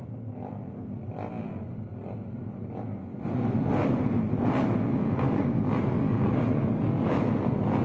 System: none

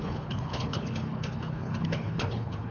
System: codec, HILCodec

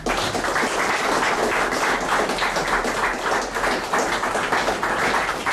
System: none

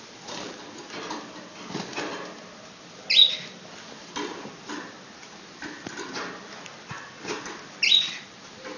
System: none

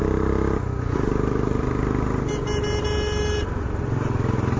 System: none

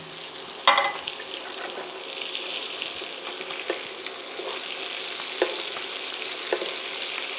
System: none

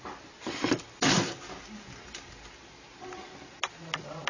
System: none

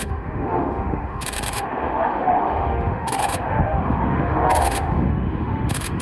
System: autoencoder, DAC-VAE